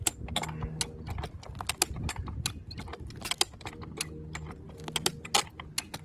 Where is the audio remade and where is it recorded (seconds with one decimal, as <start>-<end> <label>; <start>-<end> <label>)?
0.0-2.9 recorded; 2.9-3.8 remade; 3.8-6.0 recorded